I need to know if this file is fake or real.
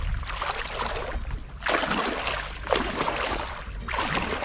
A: real